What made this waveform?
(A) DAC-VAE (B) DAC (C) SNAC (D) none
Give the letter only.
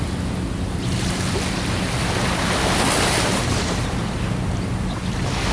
D